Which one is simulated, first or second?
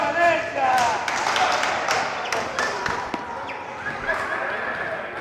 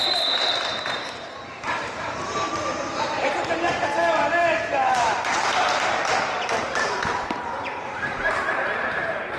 second